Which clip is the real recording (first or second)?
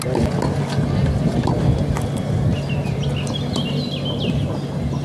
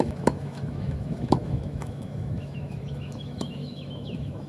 first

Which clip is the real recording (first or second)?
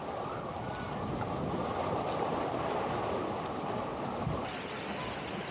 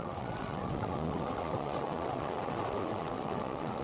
first